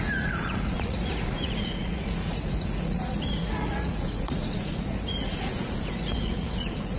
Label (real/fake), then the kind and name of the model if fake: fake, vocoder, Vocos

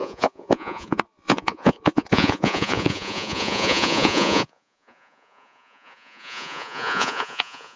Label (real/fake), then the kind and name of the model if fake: fake, vocoder, Vocos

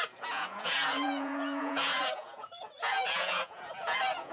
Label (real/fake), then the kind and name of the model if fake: fake, vocoder, Vocos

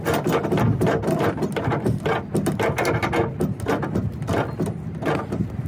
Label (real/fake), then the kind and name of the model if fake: real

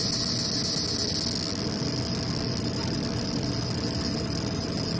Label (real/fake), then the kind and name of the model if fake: real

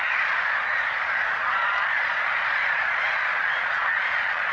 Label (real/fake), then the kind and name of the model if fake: fake, vocoder, Vocos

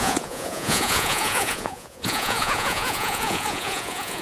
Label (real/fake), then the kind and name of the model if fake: fake, vocoder, Vocos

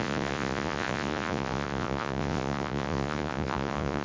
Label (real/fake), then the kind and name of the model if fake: fake, vocoder, Vocos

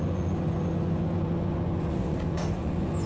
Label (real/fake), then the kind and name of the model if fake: fake, vocoder, Vocos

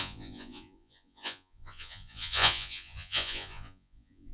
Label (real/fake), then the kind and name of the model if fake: fake, vocoder, Vocos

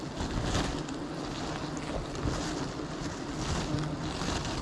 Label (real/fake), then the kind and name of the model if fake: real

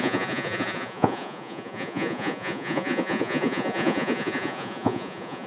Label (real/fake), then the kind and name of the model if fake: fake, vocoder, Vocos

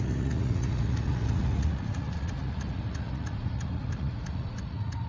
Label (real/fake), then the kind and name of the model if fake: fake, vocoder, Vocos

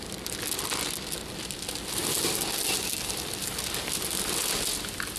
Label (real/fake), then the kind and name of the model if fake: real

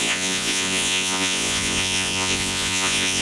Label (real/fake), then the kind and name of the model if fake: fake, vocoder, Vocos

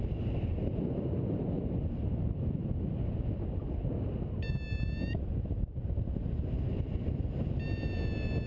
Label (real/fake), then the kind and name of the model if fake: real